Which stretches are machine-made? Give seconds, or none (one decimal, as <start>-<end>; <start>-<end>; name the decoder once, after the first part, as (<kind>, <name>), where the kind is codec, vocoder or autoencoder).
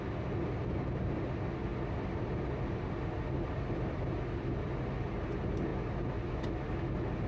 1.7-4.0 (vocoder, BigVGAN v2)